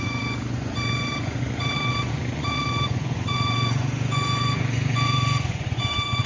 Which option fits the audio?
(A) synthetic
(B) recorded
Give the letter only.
A